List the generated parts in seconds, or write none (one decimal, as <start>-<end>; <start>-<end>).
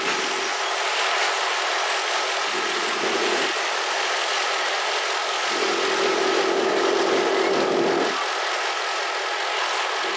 2.5-3.4